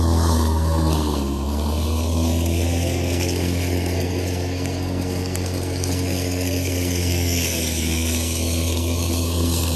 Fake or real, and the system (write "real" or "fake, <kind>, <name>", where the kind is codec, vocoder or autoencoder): fake, codec, SNAC